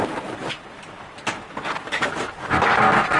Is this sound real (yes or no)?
yes